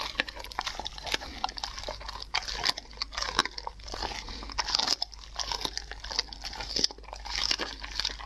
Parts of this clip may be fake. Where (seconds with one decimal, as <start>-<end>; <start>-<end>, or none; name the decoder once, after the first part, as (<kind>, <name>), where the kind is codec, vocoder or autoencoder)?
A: none